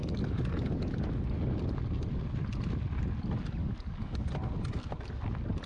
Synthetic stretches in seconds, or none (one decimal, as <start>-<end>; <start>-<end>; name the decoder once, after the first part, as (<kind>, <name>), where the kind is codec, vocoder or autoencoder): 0.0-0.9 (codec, DAC); 3.6-4.3